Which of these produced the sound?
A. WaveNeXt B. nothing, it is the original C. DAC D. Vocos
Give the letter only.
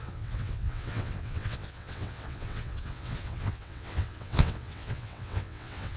A